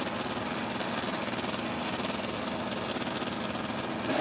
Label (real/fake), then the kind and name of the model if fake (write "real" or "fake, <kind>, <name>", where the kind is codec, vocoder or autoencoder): real